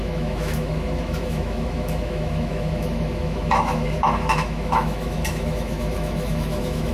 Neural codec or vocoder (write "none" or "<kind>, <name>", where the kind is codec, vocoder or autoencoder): autoencoder, DAC-VAE